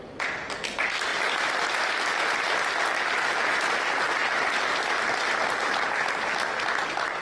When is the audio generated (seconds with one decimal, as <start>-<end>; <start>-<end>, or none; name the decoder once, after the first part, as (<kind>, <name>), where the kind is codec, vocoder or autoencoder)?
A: none